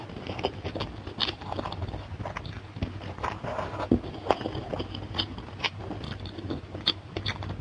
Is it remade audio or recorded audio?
recorded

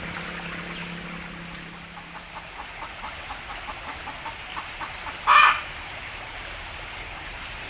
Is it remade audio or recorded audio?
recorded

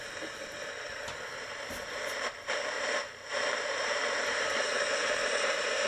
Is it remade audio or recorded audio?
remade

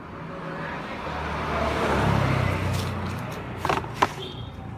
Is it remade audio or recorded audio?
recorded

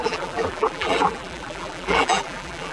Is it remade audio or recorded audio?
remade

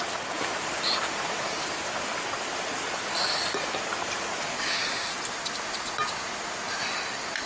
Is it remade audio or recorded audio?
recorded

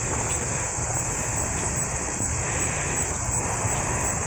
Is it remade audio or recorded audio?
remade